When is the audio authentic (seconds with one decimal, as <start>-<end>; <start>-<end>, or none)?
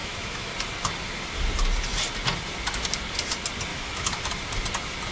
0.5-3.7; 4.3-5.1